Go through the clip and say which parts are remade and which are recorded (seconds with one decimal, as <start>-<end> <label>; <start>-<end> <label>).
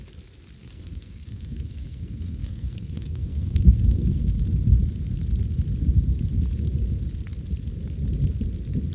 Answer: 0.0-0.6 recorded; 0.6-4.4 remade; 4.4-8.9 recorded